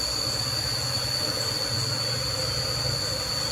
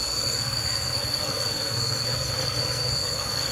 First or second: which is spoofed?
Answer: second